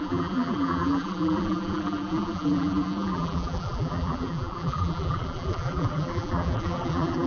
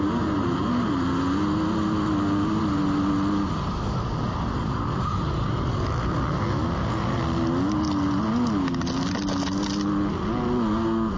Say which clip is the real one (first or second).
second